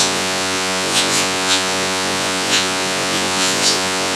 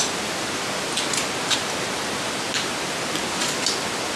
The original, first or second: second